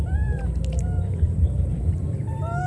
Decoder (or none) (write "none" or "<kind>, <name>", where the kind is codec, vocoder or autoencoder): vocoder, BigVGAN v2